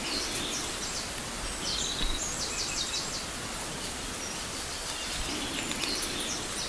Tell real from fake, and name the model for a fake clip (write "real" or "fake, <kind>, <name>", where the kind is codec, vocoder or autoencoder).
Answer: real